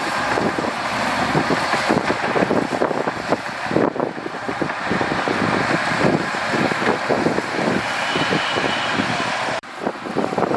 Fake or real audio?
fake